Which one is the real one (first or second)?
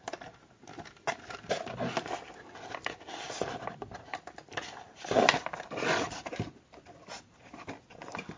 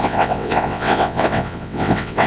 first